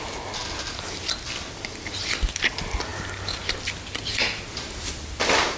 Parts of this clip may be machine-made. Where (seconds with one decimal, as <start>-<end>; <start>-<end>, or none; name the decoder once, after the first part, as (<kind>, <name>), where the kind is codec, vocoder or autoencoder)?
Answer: none